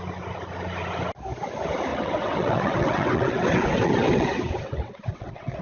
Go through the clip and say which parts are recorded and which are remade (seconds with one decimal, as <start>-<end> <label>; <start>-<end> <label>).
0.0-1.9 recorded; 1.9-5.6 remade